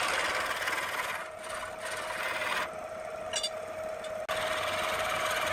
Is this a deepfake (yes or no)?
no